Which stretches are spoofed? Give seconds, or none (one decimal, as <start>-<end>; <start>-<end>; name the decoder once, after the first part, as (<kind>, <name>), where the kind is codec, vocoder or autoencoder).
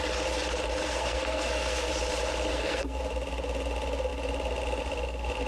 0.8-1.9 (codec, SNAC); 2.5-3.0